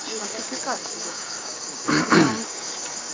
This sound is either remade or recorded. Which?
remade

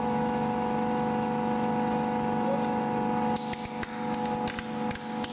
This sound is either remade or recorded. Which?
recorded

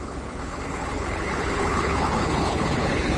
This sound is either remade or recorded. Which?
remade